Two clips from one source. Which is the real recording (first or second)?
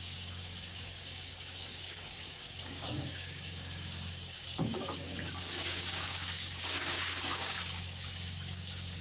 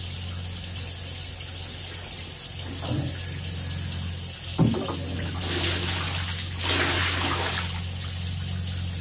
second